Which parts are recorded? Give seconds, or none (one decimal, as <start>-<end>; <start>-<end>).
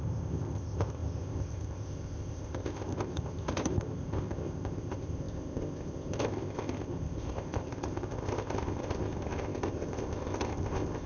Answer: none